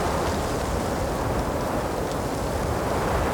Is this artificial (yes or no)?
no